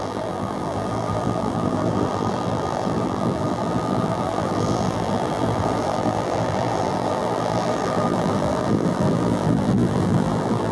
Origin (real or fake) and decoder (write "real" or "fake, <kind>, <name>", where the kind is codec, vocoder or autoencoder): fake, vocoder, BigVGAN v2